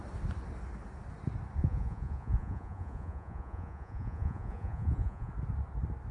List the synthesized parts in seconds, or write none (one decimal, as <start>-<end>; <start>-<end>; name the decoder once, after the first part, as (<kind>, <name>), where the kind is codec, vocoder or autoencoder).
1.6-5.3 (vocoder, Vocos)